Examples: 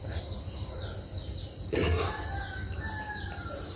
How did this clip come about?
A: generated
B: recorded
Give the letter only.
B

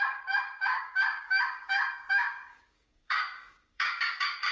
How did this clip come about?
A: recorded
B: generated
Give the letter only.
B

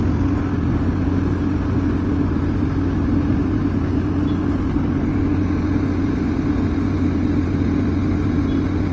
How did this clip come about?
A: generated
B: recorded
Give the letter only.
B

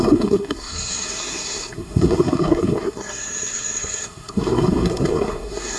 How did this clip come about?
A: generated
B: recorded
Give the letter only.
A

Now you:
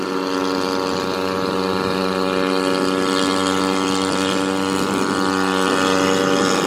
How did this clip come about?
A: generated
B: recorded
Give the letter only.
B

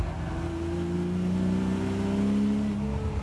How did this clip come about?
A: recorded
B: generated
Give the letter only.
A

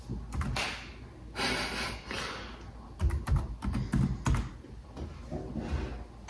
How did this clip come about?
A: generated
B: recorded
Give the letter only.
B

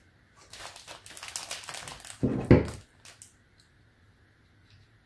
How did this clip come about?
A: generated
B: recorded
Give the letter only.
B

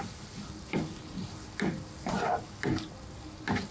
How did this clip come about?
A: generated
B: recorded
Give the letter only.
B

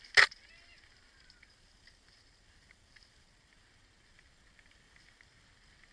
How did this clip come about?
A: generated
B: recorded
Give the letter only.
B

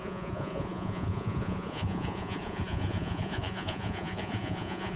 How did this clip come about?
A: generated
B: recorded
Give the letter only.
A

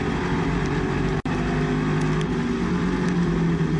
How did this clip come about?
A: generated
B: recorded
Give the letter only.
B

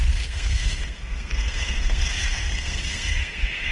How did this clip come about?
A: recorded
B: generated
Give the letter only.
B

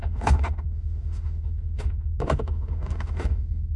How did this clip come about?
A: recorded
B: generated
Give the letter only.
B